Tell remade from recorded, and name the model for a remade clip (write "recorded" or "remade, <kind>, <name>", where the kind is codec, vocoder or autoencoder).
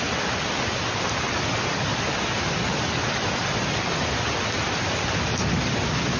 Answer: recorded